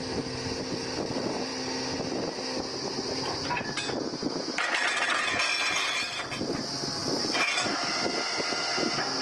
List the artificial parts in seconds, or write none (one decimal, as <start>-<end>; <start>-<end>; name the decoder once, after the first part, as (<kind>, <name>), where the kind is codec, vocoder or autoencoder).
7.0-7.9 (vocoder, BigVGAN v2)